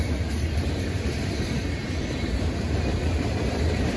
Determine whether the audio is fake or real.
fake